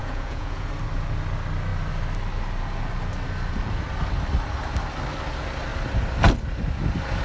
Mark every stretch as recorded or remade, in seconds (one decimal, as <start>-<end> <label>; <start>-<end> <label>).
0.0-0.7 remade; 0.7-7.2 recorded